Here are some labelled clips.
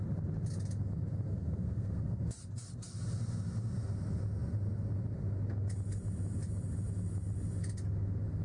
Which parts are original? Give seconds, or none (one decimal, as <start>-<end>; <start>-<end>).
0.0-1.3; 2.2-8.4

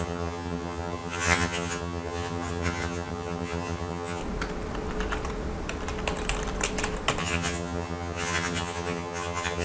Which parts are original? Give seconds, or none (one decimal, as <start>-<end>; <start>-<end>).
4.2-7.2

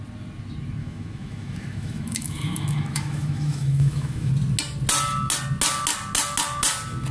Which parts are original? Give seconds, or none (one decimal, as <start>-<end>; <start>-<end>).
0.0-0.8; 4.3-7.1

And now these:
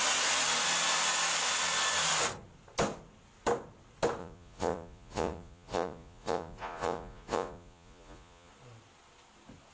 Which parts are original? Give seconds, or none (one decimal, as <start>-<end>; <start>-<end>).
0.0-4.2; 8.5-9.7

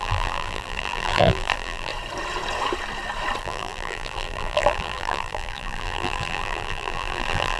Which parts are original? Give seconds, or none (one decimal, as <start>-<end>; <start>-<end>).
1.9-3.4

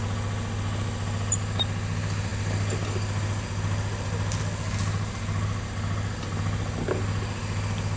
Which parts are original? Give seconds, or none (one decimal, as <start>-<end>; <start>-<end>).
0.0-8.0

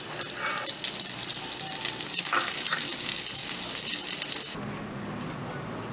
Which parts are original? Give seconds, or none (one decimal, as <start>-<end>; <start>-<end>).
0.0-5.9